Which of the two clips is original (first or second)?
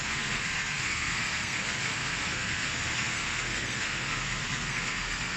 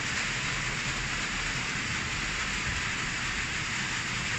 second